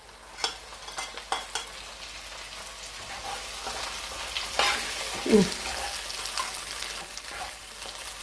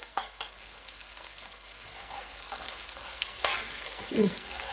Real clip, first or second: first